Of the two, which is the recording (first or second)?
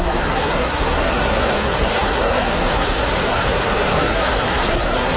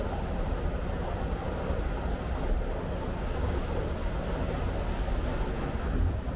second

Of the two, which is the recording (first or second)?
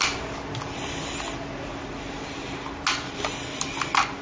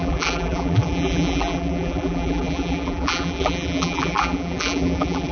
first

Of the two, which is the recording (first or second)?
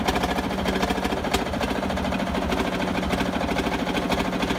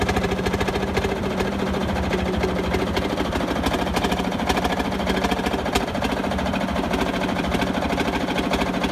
first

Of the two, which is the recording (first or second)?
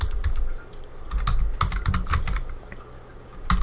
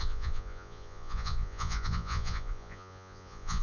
first